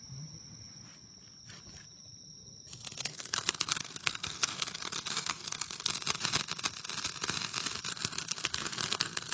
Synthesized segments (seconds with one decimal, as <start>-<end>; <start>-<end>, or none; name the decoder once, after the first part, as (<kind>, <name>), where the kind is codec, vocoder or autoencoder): 3.1-5.9 (codec, SNAC); 7.9-9.3